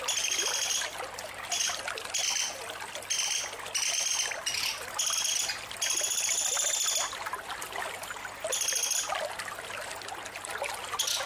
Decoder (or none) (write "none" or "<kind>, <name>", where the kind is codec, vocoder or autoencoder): none